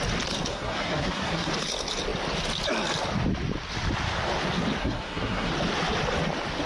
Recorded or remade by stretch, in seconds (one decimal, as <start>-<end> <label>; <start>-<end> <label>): 0.0-0.5 recorded; 0.5-1.5 remade; 1.5-4.8 recorded; 4.8-5.5 remade; 5.5-6.7 recorded